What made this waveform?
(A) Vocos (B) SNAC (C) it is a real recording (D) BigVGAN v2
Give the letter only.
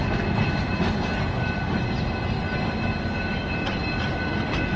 C